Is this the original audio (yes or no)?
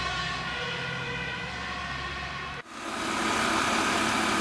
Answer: yes